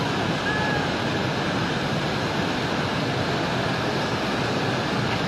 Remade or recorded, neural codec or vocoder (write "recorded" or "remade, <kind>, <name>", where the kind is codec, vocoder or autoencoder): recorded